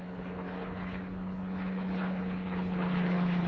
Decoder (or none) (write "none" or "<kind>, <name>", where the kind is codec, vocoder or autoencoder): codec, HILCodec